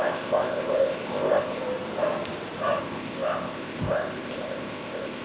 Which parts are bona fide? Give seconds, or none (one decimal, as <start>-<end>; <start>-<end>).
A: 1.6-2.8

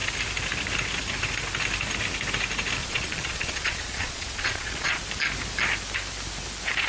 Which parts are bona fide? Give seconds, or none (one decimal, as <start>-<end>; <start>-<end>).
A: 0.0-2.8; 5.0-6.9

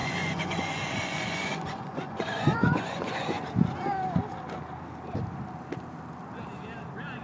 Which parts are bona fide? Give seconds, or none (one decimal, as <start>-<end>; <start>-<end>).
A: 3.4-7.2

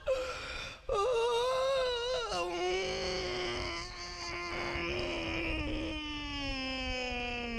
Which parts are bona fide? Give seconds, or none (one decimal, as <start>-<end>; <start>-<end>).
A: 0.0-7.6

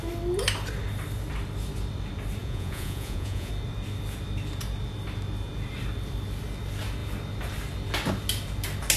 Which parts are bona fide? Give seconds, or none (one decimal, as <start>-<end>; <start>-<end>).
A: 0.0-2.4; 3.5-9.0

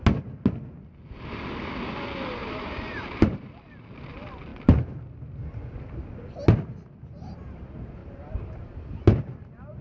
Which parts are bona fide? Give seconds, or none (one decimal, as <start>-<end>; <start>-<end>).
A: 0.0-2.4; 3.7-8.0; 8.8-9.8

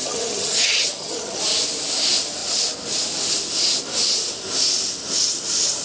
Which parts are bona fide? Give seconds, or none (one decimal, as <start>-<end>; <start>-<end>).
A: 1.4-5.8